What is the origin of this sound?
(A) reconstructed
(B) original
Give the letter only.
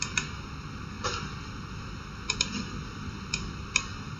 B